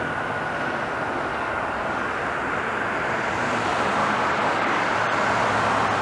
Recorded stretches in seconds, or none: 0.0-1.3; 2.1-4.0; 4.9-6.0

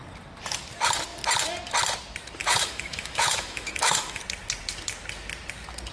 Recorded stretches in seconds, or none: 0.0-2.4; 4.2-5.9

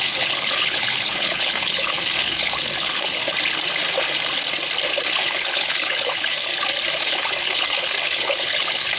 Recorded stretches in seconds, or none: 3.2-5.1; 6.5-7.1

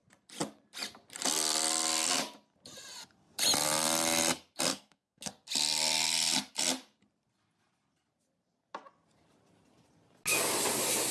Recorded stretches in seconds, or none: 0.0-4.7; 5.3-11.1

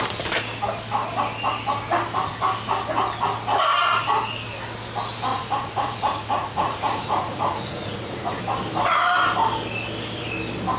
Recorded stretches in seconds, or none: 0.0-5.3; 8.4-10.8

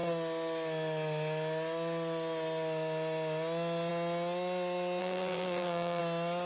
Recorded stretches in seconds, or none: 0.0-5.0; 6.0-6.5

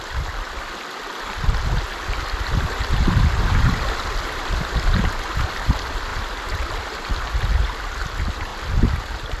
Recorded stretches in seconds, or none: 8.5-9.0

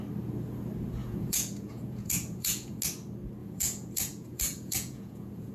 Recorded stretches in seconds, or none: 0.0-1.0; 2.8-3.4